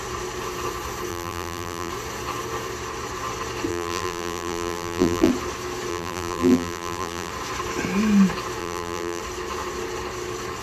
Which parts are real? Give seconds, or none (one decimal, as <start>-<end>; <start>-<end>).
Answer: 0.0-1.1; 1.9-3.7; 5.3-5.9; 7.3-8.6; 9.2-10.6